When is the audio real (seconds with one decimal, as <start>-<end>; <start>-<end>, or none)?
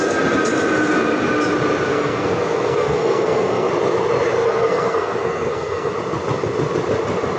0.0-1.9; 3.7-4.4; 5.9-7.4